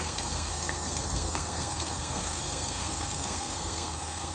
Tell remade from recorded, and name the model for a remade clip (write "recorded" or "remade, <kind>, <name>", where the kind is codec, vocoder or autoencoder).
remade, codec, SNAC